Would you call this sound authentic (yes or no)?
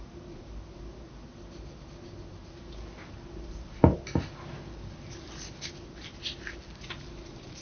yes